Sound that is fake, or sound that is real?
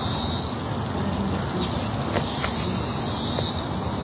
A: real